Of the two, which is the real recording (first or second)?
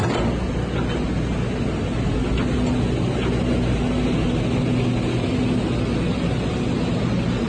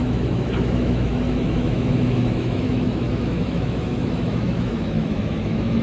first